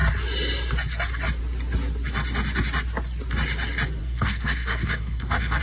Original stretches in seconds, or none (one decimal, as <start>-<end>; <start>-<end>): 0.0-4.0